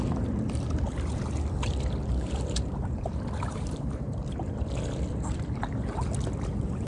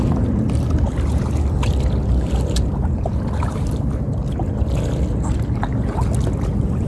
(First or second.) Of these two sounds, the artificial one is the first